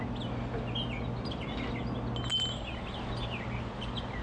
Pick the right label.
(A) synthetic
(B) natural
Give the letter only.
B